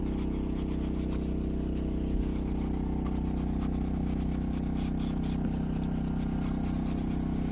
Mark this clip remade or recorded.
recorded